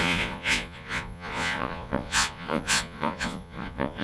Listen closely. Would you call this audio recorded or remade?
remade